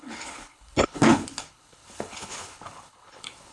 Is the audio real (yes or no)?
no